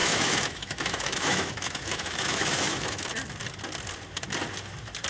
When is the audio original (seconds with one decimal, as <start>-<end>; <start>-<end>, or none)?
3.1-5.1